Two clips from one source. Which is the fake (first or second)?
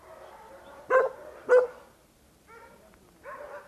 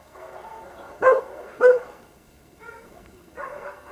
second